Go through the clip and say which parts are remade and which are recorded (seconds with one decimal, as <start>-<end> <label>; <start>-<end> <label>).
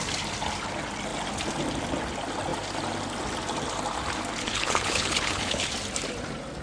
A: 0.0-4.4 recorded; 4.4-5.7 remade; 5.7-6.6 recorded